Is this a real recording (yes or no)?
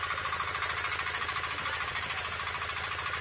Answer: yes